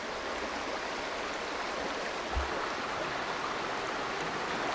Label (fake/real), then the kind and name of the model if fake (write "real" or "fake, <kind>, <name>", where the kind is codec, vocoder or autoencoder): real